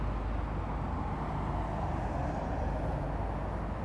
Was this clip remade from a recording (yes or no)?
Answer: no